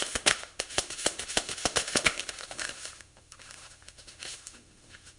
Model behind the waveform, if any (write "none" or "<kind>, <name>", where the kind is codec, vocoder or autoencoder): autoencoder, DAC-VAE